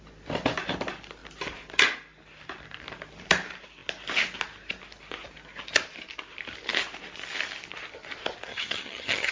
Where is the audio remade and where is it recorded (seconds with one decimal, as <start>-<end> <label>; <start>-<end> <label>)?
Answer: 0.0-8.5 recorded; 8.5-9.3 remade